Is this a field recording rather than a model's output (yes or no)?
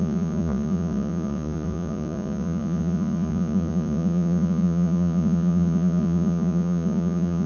no